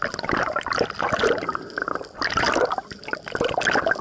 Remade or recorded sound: recorded